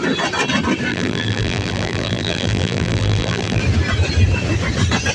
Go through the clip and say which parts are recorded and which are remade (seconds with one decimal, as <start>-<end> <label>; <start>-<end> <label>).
0.0-0.9 recorded; 0.9-3.6 remade; 3.6-5.1 recorded